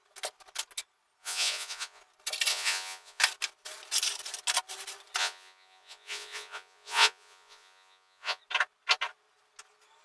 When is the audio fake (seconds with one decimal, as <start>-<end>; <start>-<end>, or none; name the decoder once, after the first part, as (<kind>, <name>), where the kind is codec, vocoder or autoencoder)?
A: 1.2-2.0 (vocoder, Vocos); 2.5-3.2; 5.2-8.4